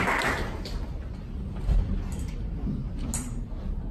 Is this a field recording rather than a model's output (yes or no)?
yes